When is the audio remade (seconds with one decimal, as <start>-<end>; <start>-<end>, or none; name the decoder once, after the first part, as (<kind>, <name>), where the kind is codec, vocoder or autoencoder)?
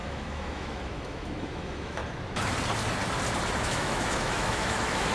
0.0-2.0 (autoencoder, DAC-VAE); 3.6-5.1